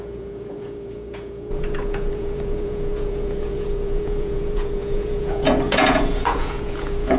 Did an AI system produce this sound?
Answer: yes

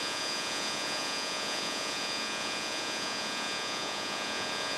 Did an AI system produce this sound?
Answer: yes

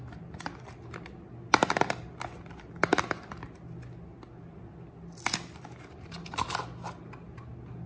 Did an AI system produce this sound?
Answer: no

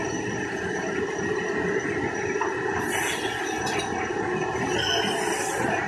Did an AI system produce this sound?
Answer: no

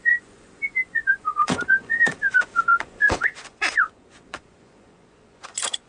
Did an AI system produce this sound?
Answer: yes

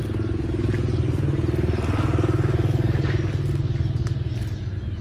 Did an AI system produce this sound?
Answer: no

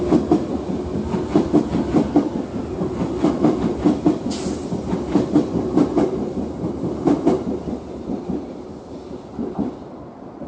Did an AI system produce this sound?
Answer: no